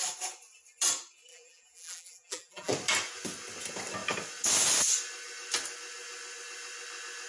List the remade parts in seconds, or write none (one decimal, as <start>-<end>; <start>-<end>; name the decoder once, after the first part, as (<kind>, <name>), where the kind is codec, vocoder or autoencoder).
1.3-2.7 (vocoder, BigVGAN v2)